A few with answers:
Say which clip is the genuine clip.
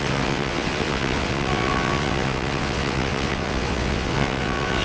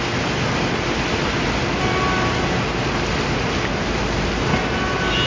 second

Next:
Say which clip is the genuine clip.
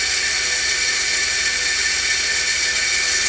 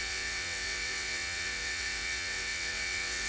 first